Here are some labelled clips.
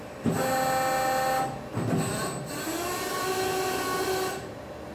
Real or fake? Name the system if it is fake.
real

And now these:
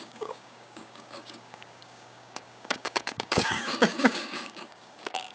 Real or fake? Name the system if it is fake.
fake, codec, DAC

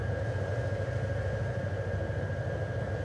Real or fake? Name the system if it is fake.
real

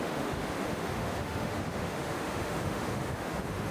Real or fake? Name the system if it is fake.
fake, autoencoder, DAC-VAE